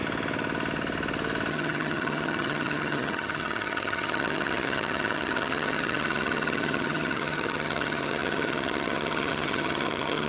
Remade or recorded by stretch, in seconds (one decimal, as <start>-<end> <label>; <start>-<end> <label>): 0.0-1.5 recorded; 1.5-10.3 remade